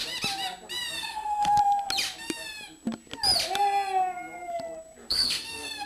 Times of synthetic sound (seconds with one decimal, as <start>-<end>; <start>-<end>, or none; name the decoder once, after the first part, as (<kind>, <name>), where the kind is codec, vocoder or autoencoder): 1.0-1.6 (codec, SNAC); 5.1-5.9